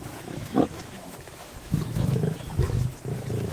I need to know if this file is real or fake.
fake